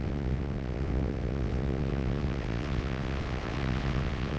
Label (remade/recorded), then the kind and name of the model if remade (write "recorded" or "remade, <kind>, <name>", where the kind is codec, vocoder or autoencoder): remade, vocoder, WaveNeXt